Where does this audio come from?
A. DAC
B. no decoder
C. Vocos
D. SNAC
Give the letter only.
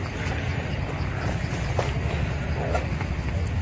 B